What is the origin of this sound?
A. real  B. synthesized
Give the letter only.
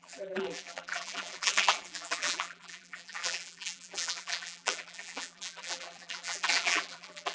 B